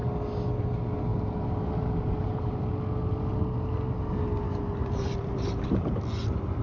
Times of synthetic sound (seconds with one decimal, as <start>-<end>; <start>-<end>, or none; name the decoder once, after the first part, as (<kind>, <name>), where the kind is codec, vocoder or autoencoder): 1.1-2.7 (vocoder, BigVGAN v2); 4.8-6.0